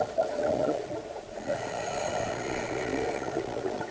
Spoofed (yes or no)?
yes